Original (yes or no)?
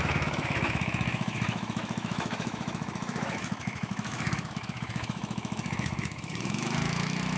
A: no